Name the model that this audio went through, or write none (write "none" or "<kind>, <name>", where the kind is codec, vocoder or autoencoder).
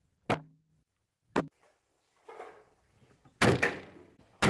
none